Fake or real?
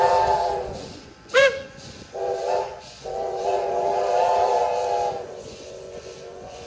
fake